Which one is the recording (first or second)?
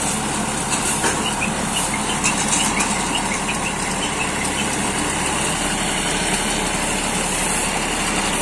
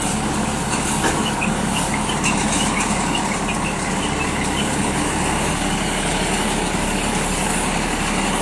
first